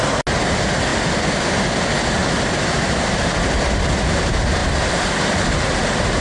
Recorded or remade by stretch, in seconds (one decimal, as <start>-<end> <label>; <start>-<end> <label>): 0.0-0.9 recorded; 0.9-1.6 remade; 1.6-2.2 recorded; 2.2-3.1 remade; 3.1-4.6 recorded; 4.6-5.6 remade; 5.6-6.2 recorded